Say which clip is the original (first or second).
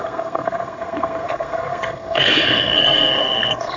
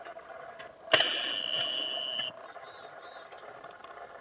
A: second